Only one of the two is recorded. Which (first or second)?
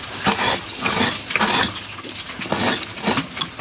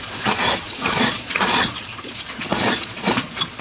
first